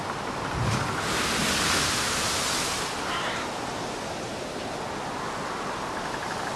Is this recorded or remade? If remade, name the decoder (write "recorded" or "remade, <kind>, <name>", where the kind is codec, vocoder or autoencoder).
recorded